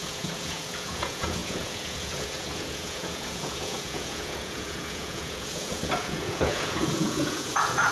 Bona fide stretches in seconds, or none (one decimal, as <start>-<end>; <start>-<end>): none